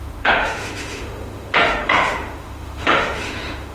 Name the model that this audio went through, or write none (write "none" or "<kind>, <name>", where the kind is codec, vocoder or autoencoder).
autoencoder, DAC-VAE